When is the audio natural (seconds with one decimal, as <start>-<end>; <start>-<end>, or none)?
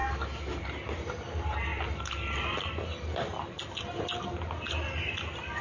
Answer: 0.6-5.6